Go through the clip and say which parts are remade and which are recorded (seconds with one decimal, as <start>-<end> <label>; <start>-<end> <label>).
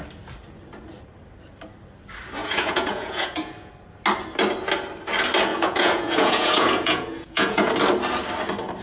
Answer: 0.0-2.4 recorded; 2.4-3.7 remade; 3.7-5.5 recorded; 5.5-7.7 remade; 7.7-8.8 recorded